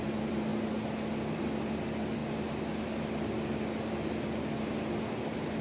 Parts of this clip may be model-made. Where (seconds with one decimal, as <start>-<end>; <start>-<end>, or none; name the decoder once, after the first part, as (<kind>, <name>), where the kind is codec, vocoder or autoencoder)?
0.0-0.5 (vocoder, BigVGAN v2); 1.3-2.2